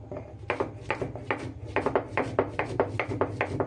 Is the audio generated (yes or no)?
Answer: no